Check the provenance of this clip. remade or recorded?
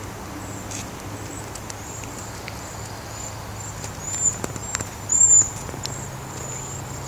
remade